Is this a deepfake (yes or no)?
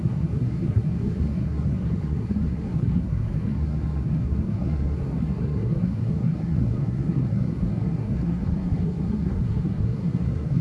yes